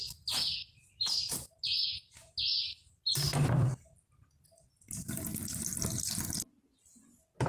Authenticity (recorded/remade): recorded